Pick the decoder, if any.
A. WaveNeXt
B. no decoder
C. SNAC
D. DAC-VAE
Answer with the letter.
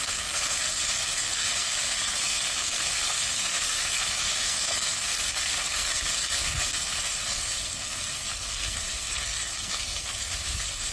C